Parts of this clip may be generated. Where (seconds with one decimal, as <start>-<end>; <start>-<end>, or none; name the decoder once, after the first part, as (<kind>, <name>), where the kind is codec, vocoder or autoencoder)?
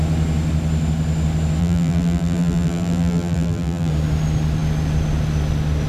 1.6-3.9 (vocoder, BigVGAN v2)